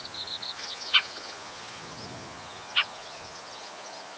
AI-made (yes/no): yes